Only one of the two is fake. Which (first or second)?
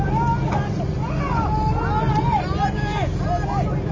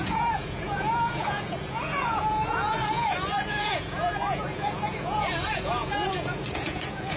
second